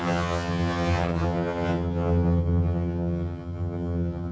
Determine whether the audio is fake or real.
fake